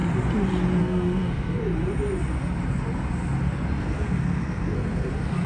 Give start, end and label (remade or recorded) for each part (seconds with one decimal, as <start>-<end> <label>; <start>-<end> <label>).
0.0-0.8 recorded; 0.8-1.6 remade; 1.6-3.8 recorded; 3.8-5.5 remade